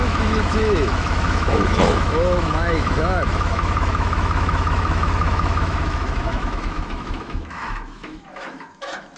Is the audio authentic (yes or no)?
no